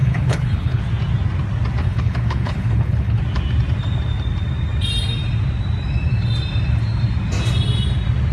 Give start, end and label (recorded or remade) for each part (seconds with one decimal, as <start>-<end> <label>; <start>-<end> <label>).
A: 0.0-0.8 remade; 0.8-1.8 recorded; 1.8-3.2 remade; 3.2-8.3 recorded